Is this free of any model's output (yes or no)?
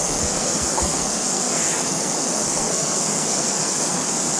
no